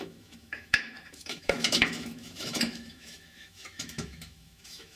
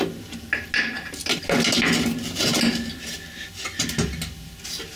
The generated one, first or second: first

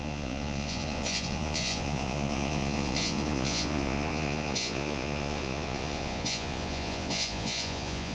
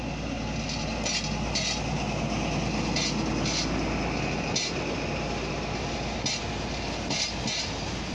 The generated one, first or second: first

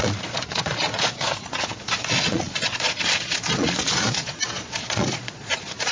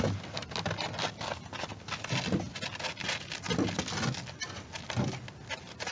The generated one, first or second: first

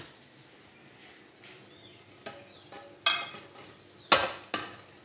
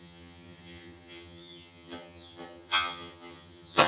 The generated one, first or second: second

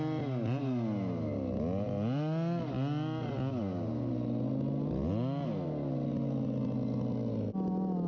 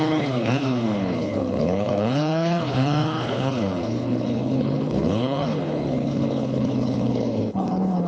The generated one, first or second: second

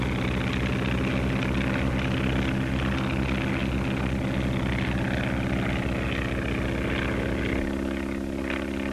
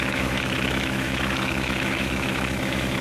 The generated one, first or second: second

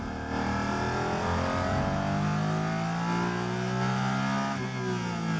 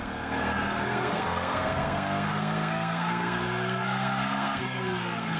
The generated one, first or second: second